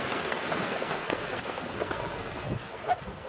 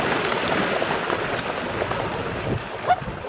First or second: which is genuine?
second